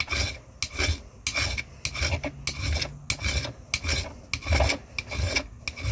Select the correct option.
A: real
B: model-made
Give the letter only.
A